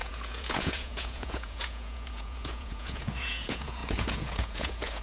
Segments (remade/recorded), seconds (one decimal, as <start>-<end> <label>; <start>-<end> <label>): 0.0-5.0 remade